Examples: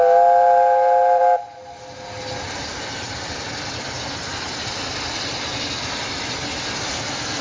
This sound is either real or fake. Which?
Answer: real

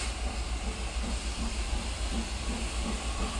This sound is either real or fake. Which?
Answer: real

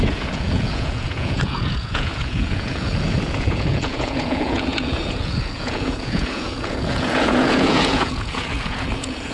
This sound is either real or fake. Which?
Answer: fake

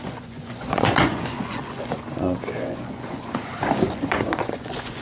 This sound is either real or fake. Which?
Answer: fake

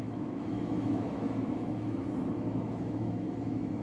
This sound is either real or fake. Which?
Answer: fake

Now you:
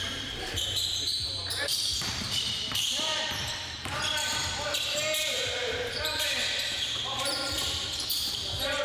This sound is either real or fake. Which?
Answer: fake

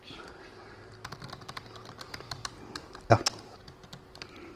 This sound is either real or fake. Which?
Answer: real